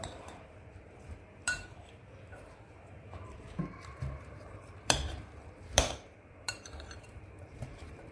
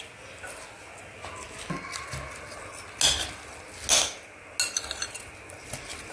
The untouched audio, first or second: second